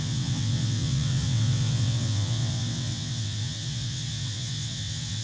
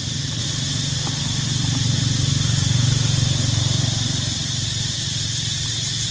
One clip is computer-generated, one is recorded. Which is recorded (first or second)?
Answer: second